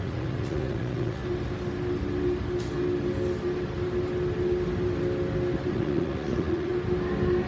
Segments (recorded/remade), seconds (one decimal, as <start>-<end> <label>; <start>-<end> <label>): 0.0-1.2 remade; 1.2-5.7 recorded; 5.7-6.7 remade; 6.7-7.5 recorded